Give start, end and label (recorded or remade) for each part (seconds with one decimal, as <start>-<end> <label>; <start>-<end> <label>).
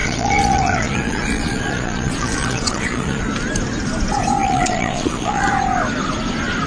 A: 0.0-3.2 remade; 3.2-4.4 recorded; 4.4-5.5 remade; 5.5-6.7 recorded